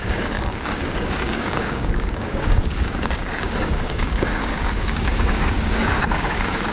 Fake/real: fake